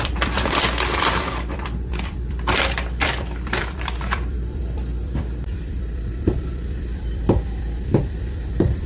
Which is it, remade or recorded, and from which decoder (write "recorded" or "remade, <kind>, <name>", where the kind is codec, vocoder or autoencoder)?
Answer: remade, vocoder, BigVGAN v2